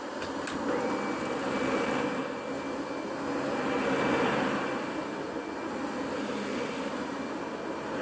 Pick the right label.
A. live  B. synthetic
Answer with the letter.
A